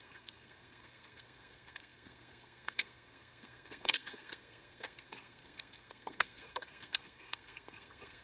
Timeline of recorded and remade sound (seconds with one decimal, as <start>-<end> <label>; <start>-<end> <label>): 0.0-8.2 remade